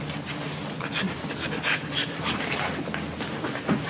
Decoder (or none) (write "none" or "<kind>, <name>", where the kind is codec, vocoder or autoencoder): none